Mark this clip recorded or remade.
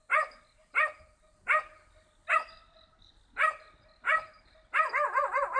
recorded